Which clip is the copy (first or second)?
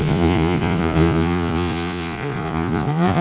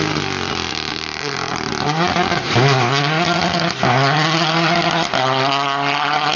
first